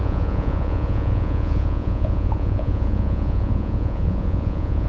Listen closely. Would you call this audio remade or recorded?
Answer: remade